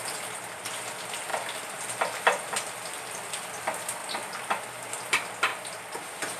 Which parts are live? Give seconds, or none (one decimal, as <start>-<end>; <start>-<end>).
0.0-6.4